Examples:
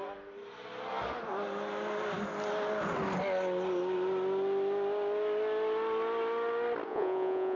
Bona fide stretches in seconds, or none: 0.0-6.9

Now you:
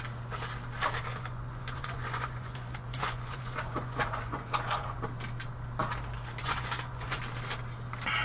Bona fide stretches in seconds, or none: 0.0-1.1; 5.0-6.4; 7.2-8.2

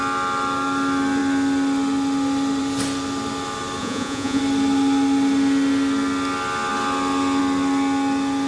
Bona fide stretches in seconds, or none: 0.0-3.8; 4.4-8.5

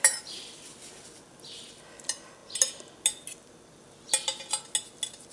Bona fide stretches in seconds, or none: 0.0-5.3